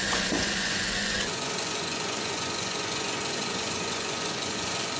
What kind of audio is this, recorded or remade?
remade